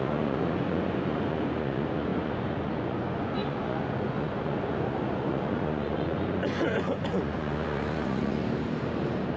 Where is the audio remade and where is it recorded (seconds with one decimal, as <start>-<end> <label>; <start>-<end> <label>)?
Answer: 0.0-8.4 remade; 8.4-9.4 recorded